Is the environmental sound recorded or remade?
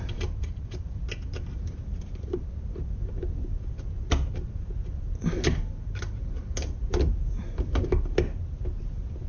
recorded